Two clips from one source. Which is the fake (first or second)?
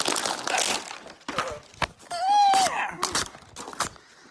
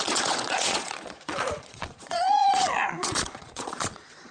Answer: second